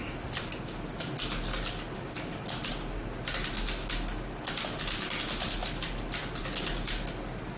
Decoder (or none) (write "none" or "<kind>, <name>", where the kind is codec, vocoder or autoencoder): none